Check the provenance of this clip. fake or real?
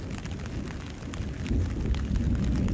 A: real